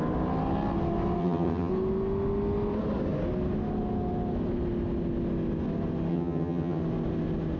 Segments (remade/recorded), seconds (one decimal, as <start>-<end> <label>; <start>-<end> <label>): 0.0-1.2 recorded; 1.2-1.7 remade; 1.7-6.1 recorded; 6.1-6.8 remade; 6.8-7.6 recorded